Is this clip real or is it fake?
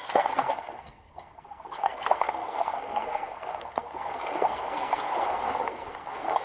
fake